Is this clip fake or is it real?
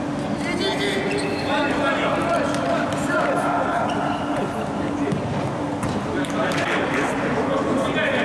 real